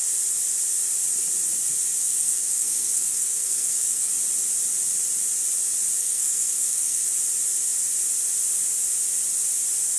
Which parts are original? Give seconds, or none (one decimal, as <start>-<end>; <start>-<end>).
0.0-2.0; 4.1-6.0; 7.0-10.0